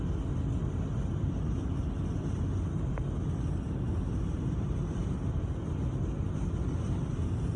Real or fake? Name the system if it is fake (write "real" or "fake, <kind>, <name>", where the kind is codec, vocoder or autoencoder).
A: real